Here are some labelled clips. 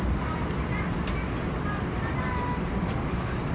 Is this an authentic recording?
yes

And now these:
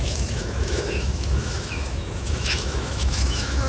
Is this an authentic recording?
no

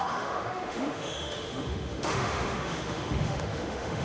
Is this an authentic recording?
no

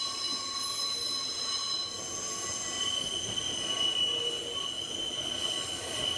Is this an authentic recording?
yes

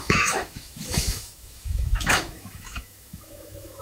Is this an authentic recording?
no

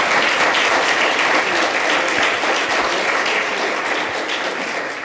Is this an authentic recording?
yes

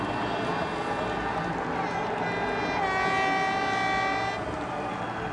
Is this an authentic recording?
yes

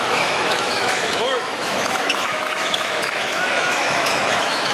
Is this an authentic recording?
no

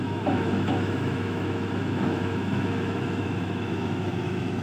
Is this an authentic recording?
no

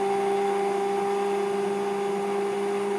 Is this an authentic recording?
yes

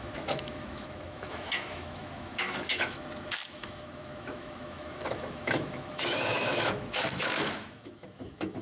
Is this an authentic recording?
no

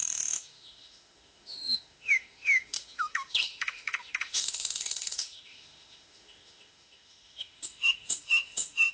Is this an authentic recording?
no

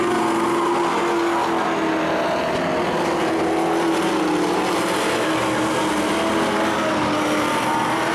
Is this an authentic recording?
yes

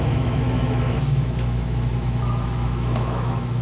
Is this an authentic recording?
no